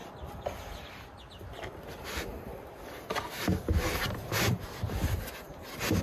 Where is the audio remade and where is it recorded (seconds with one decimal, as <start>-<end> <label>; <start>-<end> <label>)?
0.0-6.0 recorded

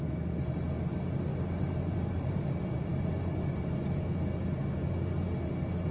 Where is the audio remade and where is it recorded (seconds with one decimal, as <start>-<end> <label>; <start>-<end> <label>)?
0.0-1.3 recorded; 1.3-3.1 remade; 3.1-5.9 recorded

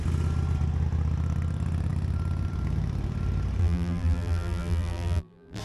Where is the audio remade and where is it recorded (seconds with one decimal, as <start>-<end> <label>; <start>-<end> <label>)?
0.0-3.6 recorded; 3.6-5.6 remade

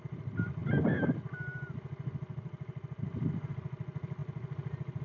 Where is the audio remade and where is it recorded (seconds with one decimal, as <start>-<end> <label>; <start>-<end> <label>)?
0.0-5.0 recorded